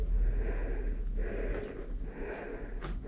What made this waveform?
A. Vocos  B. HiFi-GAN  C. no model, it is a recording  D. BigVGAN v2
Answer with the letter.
C